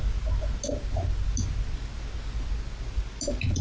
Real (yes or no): yes